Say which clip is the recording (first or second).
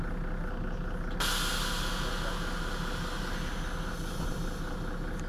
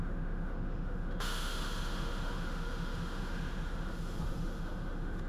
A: first